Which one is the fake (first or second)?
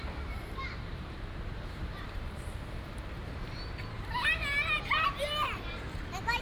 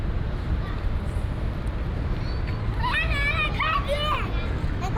first